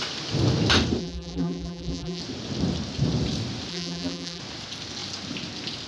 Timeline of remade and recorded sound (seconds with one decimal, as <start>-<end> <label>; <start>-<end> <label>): 0.0-1.0 recorded; 1.0-2.2 remade; 2.2-3.7 recorded; 3.7-4.4 remade; 4.4-5.9 recorded